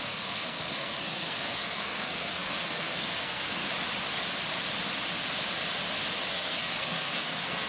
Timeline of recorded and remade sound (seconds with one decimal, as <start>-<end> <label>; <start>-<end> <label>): 0.0-3.6 remade; 3.6-6.3 recorded; 6.3-7.7 remade